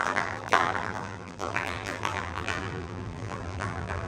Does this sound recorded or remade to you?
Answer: remade